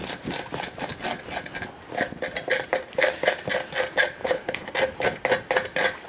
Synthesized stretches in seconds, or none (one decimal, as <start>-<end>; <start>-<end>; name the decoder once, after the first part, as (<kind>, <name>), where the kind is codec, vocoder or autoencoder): 4.2-4.7 (codec, HILCodec)